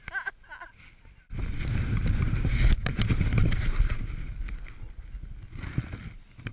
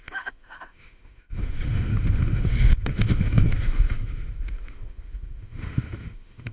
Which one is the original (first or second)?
first